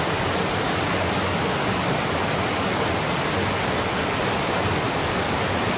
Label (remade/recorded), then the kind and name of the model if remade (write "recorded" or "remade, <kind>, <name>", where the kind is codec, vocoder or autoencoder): recorded